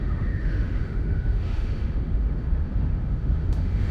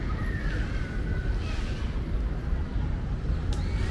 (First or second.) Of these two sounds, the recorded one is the second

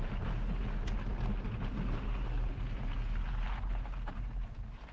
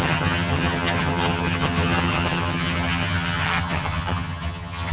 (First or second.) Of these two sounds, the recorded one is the first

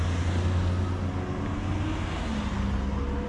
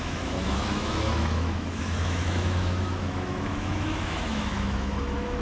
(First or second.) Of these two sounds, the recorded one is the first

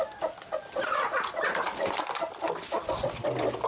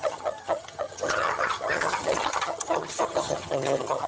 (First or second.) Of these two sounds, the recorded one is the first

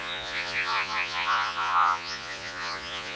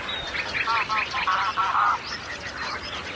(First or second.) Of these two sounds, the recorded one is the second